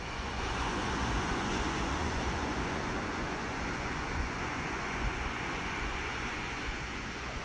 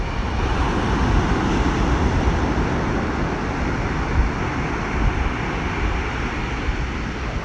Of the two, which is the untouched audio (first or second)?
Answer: second